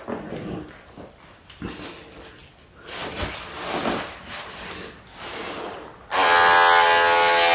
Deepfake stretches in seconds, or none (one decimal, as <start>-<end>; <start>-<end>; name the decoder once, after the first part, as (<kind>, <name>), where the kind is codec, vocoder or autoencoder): none